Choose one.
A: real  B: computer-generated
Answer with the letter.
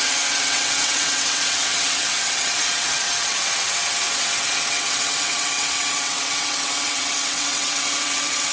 B